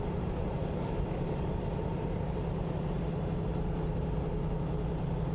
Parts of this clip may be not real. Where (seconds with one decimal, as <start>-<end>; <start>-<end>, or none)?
0.6-1.7